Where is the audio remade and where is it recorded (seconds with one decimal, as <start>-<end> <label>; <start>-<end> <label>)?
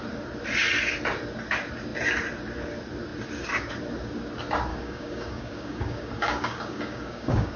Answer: 0.0-4.7 recorded; 4.7-7.6 remade